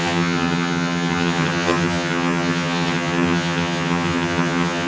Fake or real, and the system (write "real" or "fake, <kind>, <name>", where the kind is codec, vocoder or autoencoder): fake, vocoder, HiFi-GAN